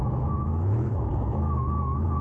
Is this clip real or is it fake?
fake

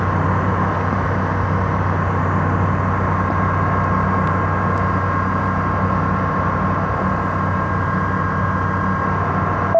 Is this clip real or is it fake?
real